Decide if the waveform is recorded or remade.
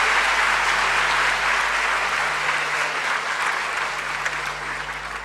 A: recorded